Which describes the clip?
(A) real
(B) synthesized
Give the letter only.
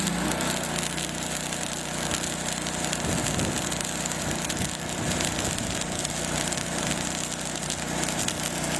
A